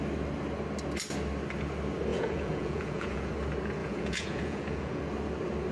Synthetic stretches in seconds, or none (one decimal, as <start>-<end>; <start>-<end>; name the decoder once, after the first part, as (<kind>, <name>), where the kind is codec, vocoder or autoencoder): 2.1-3.3 (vocoder, Vocos); 3.8-5.0